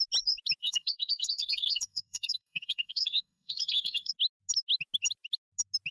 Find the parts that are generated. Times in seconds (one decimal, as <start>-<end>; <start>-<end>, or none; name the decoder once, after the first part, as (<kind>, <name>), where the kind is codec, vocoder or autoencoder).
0.6-4.1 (codec, SNAC)

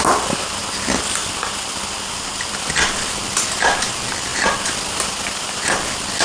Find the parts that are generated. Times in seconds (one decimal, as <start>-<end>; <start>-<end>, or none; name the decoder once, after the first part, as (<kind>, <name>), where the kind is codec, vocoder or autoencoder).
none

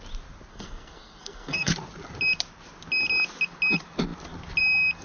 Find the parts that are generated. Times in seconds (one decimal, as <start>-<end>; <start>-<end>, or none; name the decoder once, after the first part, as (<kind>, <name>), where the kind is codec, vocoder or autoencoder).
0.5-1.7 (codec, SNAC)

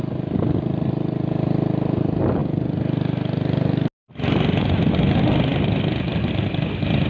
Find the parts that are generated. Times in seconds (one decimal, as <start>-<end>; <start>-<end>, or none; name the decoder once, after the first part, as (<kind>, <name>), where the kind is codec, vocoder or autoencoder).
none

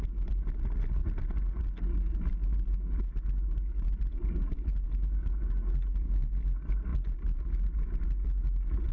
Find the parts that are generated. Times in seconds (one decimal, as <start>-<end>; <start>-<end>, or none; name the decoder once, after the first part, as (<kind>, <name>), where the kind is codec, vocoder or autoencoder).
none

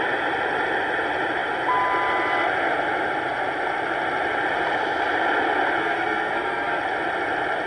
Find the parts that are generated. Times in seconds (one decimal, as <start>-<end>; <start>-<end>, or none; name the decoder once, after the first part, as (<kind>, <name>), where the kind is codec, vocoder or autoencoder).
5.8-6.8 (codec, SNAC)

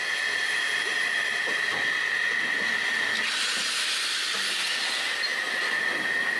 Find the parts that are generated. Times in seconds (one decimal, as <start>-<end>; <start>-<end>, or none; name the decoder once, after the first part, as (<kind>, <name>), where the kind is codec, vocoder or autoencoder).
none